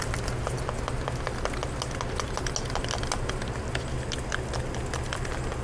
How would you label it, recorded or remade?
recorded